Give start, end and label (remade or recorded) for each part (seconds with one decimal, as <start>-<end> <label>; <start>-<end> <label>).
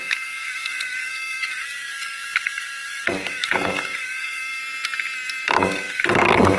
0.0-4.6 remade; 4.6-5.6 recorded; 5.6-6.6 remade